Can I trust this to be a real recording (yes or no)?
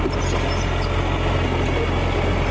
yes